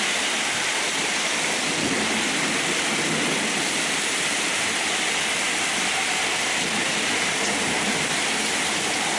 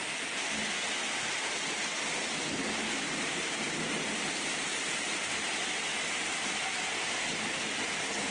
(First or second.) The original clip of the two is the second